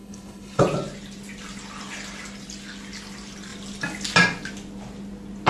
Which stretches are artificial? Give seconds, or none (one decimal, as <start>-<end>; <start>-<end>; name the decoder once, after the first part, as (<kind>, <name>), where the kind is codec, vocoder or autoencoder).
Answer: 0.0-0.6 (codec, HILCodec)